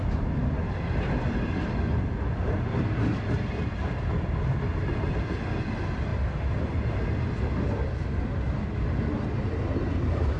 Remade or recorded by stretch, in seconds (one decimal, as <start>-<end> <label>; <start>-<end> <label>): 0.0-10.4 recorded